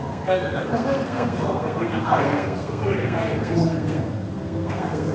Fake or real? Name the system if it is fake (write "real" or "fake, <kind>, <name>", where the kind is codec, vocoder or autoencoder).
fake, codec, SNAC